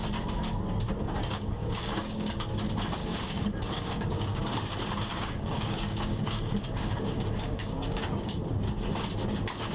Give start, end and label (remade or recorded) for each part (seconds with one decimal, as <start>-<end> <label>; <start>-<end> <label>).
0.0-1.6 recorded; 1.6-2.3 remade; 2.3-3.0 recorded; 3.0-4.4 remade; 4.4-5.1 recorded; 5.1-8.4 remade; 8.4-9.7 recorded